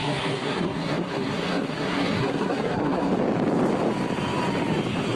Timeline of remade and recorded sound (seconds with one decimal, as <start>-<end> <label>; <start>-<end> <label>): 0.0-3.1 remade; 3.1-5.2 recorded